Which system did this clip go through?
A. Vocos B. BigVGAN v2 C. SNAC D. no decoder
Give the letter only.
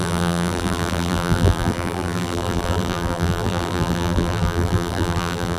B